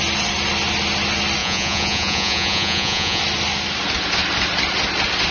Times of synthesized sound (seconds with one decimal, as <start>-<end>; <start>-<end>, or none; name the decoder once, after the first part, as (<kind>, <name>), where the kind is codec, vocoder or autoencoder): 1.4-3.2 (vocoder, Vocos)